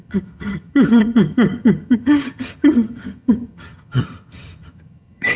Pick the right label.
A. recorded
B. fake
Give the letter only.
B